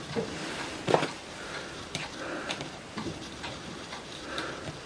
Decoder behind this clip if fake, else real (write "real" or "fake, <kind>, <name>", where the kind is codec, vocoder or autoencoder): fake, vocoder, BigVGAN v2